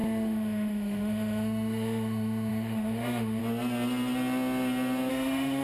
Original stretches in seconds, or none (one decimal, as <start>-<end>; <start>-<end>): 3.4-5.1